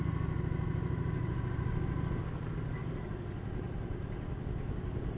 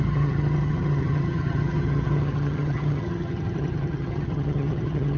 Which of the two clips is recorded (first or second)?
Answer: first